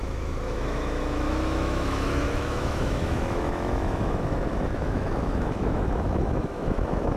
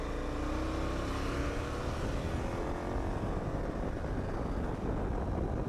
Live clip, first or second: second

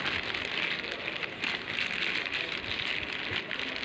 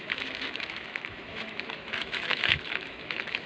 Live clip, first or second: first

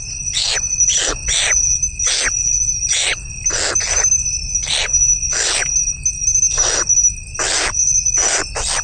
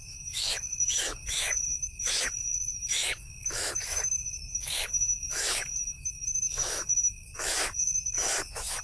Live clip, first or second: first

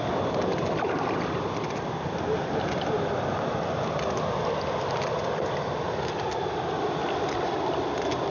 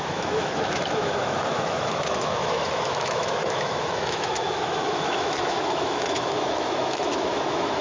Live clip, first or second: first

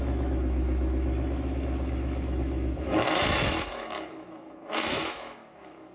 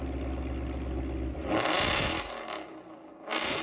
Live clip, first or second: second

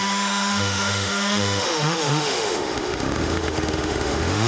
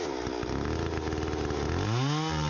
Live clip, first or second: second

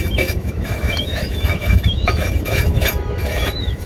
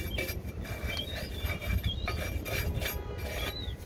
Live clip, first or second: second